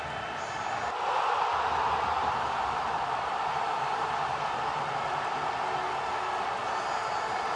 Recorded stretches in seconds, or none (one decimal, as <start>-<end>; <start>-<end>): 0.0-2.2; 4.6-7.6